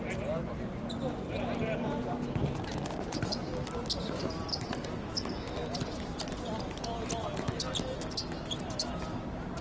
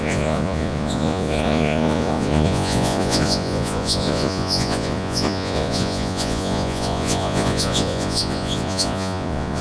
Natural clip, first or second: first